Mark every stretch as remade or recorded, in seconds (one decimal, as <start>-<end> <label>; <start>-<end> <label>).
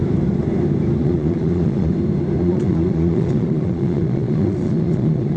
0.0-1.0 recorded; 1.0-1.9 remade; 1.9-2.4 recorded; 2.4-5.4 remade